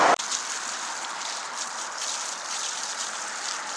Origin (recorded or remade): recorded